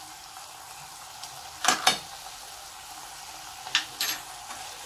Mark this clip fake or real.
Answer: real